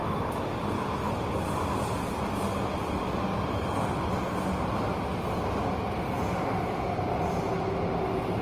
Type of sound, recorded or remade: recorded